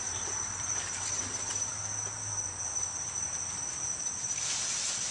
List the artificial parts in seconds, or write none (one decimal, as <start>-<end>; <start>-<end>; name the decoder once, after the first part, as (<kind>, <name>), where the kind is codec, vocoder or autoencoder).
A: 0.0-1.7 (vocoder, BigVGAN v2); 2.6-5.1

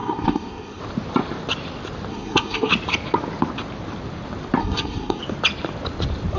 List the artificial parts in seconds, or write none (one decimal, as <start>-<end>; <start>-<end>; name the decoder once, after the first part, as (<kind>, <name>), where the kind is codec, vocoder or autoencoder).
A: 0.0-0.8 (codec, SNAC); 2.1-2.7; 4.6-5.2

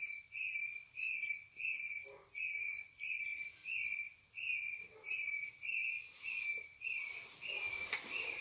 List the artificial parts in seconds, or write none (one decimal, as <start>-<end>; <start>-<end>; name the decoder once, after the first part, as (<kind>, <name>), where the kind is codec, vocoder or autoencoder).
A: none